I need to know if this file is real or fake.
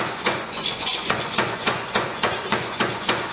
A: fake